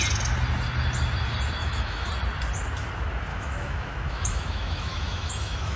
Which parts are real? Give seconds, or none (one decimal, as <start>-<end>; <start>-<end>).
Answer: 0.0-1.6; 2.1-3.3

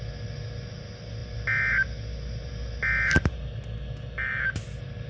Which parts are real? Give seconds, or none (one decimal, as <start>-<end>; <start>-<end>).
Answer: 0.0-5.1

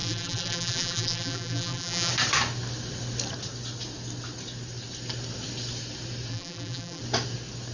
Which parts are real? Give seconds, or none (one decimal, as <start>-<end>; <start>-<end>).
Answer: 2.1-6.3; 7.0-7.7

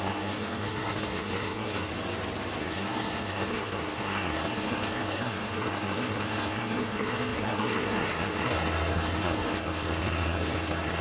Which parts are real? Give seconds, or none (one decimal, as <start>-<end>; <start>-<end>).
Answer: 1.9-2.6

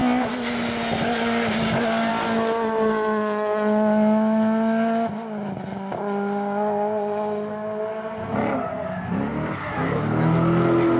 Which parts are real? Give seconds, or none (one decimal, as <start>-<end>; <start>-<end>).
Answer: 0.0-11.0